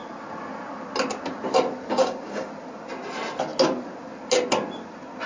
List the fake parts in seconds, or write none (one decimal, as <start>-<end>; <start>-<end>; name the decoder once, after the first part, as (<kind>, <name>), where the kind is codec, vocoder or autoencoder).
1.9-2.5 (codec, DAC)